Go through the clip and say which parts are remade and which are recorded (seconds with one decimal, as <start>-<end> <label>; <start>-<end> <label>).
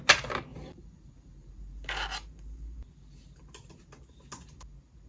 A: 0.0-0.5 recorded; 0.5-1.5 remade; 1.5-5.1 recorded